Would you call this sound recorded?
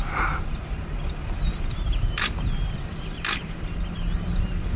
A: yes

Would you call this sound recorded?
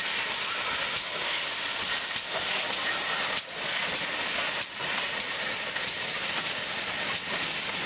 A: yes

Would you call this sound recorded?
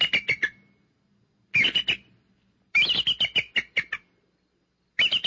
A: yes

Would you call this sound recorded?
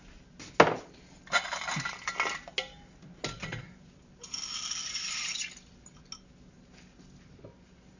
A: yes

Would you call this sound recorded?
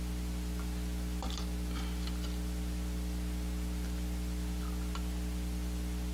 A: yes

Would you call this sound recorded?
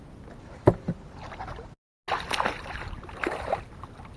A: yes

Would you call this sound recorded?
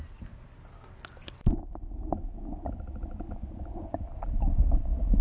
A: yes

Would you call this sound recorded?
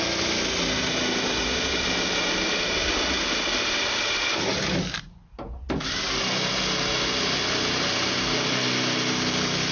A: yes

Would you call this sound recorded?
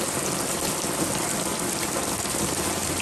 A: no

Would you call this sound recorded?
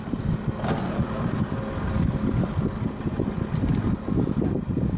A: yes